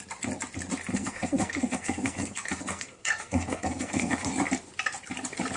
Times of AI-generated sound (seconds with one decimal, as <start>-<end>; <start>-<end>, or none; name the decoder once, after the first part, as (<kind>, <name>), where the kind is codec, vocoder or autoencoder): 0.9-4.3 (codec, SNAC)